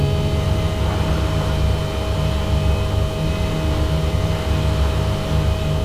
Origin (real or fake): real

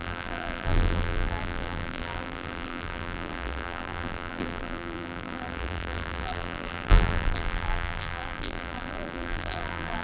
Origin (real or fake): fake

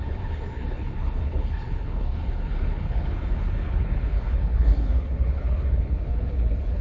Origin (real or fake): fake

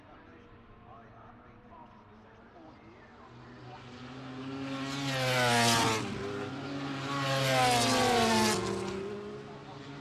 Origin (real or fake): real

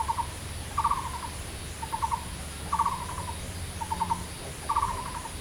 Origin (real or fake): real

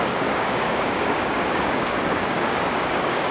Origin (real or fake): fake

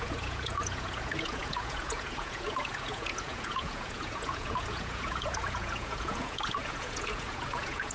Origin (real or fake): fake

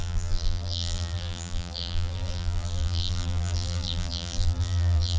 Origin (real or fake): fake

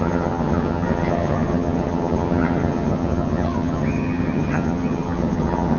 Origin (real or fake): fake